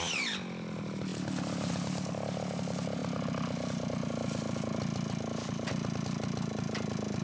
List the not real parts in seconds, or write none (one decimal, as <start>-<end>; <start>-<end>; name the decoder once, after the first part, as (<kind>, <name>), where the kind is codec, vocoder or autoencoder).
none